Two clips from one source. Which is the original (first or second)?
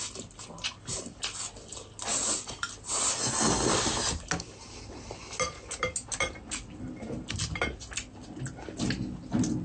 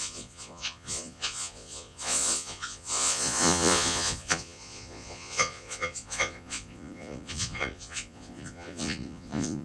first